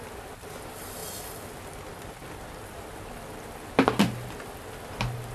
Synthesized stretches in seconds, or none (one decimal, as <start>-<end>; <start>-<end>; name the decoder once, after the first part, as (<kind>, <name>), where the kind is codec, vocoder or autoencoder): none